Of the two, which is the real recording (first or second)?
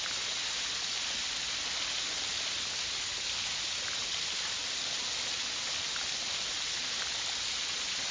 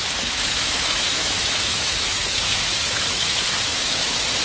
first